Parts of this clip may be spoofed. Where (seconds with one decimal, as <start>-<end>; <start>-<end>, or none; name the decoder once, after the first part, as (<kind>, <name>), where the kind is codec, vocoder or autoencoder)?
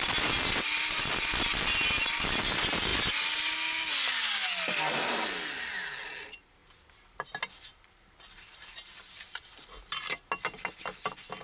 none